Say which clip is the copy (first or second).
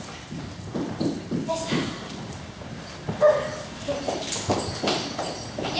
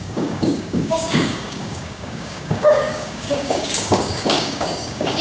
second